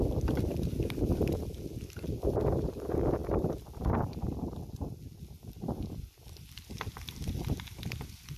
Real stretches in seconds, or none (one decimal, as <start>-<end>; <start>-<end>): 0.0-8.4